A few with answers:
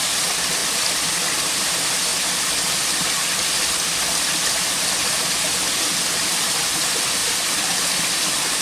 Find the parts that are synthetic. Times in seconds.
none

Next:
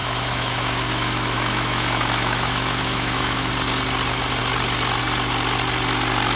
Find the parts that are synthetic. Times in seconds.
0.0-3.5 (autoencoder, DAC-VAE)